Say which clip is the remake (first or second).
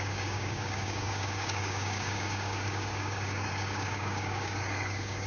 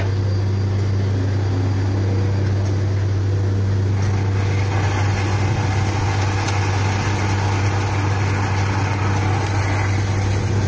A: first